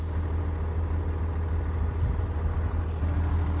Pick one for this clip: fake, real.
real